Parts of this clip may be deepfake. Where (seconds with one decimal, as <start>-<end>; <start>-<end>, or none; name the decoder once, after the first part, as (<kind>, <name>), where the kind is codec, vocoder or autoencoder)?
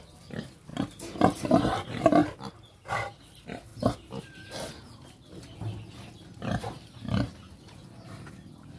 0.0-0.7 (vocoder, BigVGAN v2); 1.4-2.2; 2.9-3.7; 8.3-8.8